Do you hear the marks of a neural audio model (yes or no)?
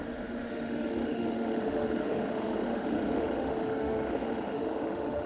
yes